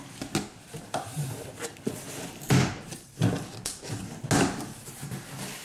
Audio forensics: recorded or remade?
recorded